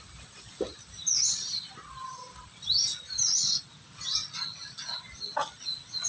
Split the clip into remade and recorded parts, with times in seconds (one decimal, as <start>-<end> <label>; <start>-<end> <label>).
0.0-6.1 recorded